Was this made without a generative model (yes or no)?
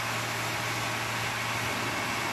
yes